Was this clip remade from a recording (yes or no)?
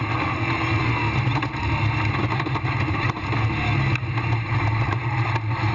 no